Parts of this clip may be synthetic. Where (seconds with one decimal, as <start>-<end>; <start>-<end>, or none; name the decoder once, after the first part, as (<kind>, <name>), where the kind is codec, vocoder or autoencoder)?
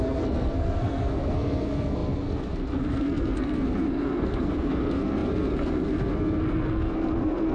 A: 0.0-7.5 (codec, SNAC)